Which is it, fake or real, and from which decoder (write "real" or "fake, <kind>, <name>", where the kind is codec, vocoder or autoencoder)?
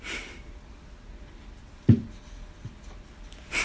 real